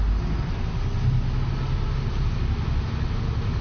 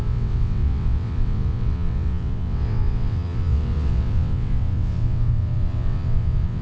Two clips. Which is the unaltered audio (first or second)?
first